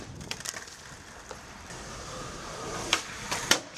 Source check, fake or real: fake